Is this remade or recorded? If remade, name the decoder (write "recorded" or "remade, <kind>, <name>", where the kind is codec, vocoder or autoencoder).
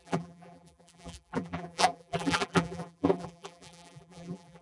remade, vocoder, BigVGAN v2